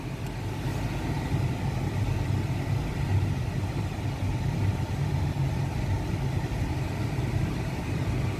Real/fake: real